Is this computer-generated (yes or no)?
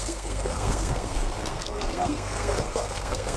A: yes